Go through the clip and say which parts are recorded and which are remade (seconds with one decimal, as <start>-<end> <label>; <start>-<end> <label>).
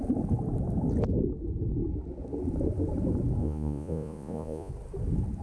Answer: 0.0-3.4 recorded; 3.4-4.7 remade; 4.7-5.4 recorded